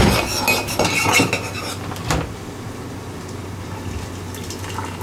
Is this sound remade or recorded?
recorded